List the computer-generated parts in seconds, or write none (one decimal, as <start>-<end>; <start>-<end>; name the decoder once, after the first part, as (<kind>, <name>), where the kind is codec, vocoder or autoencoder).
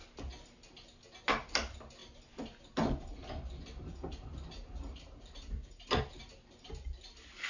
none